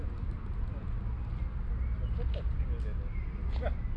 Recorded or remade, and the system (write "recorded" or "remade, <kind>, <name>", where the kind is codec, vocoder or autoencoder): recorded